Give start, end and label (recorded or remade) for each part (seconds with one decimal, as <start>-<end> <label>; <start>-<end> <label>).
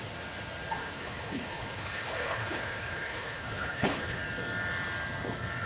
0.0-0.8 recorded; 0.8-4.2 remade; 4.2-5.7 recorded